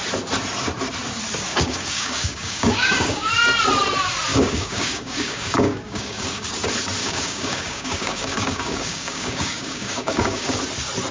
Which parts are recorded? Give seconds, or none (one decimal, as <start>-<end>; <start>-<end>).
0.0-1.5; 3.3-4.3; 6.5-7.0; 10.6-11.1